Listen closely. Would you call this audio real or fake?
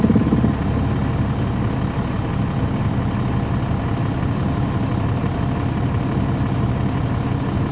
real